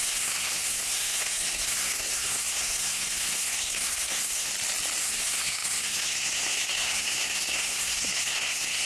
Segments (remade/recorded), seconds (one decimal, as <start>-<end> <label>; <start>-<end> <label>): 0.0-4.5 remade; 4.5-5.0 recorded; 5.0-8.9 remade